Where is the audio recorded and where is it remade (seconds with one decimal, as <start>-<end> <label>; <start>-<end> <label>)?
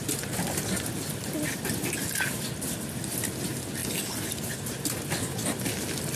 0.0-6.2 recorded